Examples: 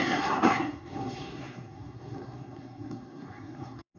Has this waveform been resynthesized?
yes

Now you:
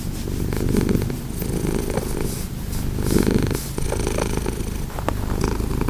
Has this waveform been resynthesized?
no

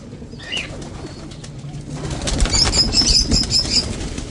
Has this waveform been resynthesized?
no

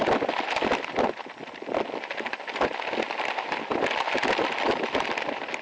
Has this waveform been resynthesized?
no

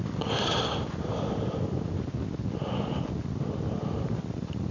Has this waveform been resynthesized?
no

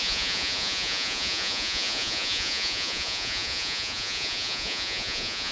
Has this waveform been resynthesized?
yes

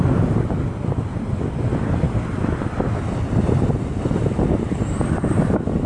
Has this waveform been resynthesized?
no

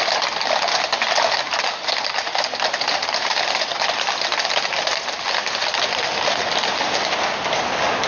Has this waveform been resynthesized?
no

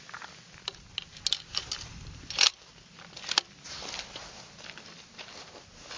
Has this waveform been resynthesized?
no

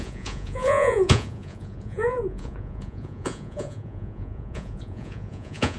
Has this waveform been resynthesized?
yes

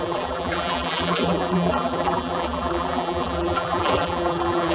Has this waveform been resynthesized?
yes